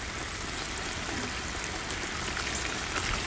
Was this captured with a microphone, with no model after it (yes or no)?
yes